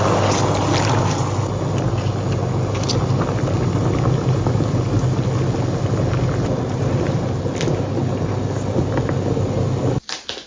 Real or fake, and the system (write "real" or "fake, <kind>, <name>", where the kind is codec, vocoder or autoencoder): real